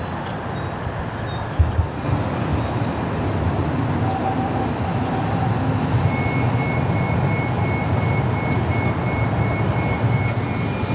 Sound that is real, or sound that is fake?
real